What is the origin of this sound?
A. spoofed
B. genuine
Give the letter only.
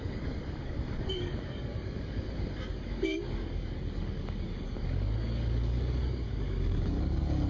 A